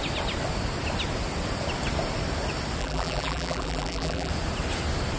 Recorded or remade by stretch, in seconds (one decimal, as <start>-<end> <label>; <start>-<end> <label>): 0.0-2.8 recorded; 2.8-4.3 remade; 4.3-5.2 recorded